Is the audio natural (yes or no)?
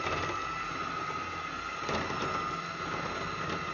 yes